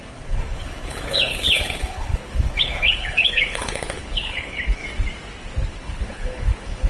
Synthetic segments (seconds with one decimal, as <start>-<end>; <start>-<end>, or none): 0.0-4.8; 5.7-6.9

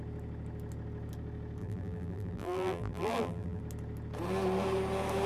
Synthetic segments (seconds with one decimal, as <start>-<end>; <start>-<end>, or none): 1.6-3.6

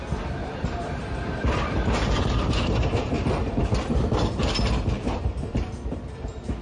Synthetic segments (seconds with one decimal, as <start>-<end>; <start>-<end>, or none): 0.4-3.9; 4.4-6.6